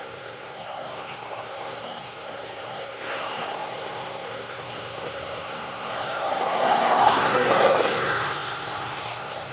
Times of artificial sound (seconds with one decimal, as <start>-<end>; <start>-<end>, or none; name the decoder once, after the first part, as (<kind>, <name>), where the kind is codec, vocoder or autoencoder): 0.0-9.5 (codec, SNAC)